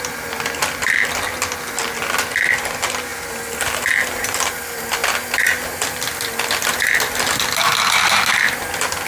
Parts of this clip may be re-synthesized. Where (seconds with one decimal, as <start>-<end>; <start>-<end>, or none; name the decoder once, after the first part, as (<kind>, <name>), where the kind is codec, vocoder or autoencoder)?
none